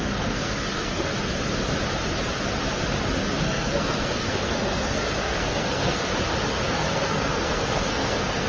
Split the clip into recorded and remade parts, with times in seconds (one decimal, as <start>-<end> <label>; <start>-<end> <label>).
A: 0.0-1.1 remade; 1.1-3.4 recorded; 3.4-6.1 remade; 6.1-6.7 recorded; 6.7-8.5 remade